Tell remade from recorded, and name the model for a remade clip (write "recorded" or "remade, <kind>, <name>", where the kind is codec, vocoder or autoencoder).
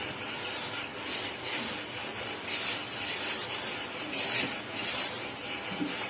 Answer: recorded